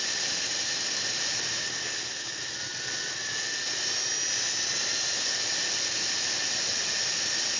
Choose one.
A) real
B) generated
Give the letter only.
A